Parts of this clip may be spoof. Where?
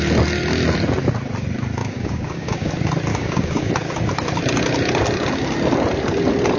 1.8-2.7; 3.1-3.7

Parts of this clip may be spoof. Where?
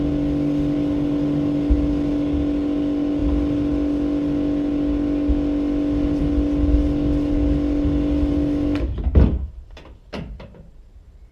none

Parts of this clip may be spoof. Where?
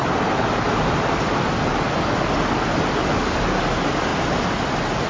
3.0-3.6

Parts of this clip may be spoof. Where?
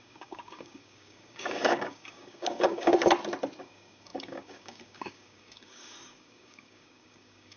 0.0-2.9; 3.6-7.6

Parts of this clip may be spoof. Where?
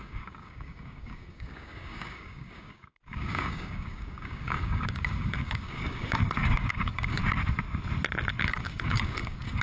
0.0-7.2; 8.4-9.6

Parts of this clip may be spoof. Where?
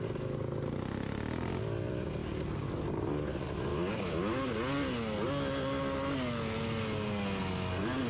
3.7-4.5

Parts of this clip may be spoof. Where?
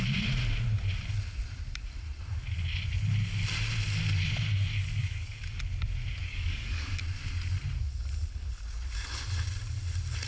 5.0-5.6; 6.2-7.0